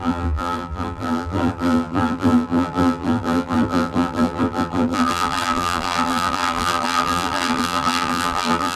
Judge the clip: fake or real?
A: fake